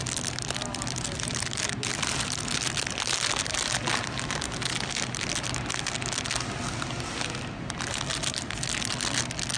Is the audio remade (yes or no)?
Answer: no